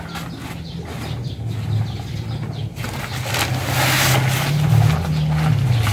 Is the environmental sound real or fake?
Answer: real